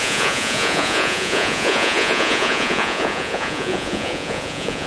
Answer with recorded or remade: remade